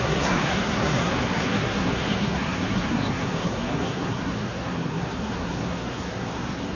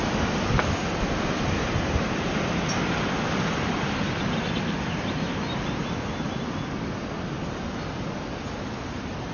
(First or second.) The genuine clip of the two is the second